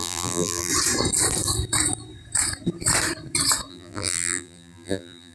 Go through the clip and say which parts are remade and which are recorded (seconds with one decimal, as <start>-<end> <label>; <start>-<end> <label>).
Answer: 0.0-0.7 remade; 0.7-3.7 recorded; 3.7-5.3 remade